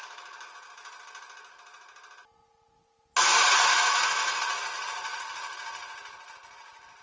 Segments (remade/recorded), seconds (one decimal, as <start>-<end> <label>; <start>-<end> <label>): 0.0-3.7 recorded; 3.7-4.4 remade; 4.4-7.0 recorded